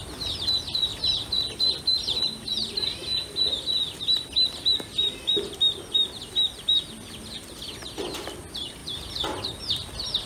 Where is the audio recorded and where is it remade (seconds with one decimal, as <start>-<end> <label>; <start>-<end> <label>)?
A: 0.0-10.3 recorded